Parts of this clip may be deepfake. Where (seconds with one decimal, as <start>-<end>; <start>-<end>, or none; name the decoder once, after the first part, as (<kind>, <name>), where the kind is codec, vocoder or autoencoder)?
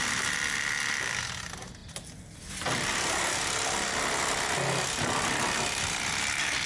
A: none